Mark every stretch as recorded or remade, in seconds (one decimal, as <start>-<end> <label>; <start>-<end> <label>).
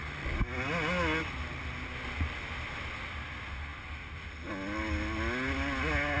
0.0-6.2 recorded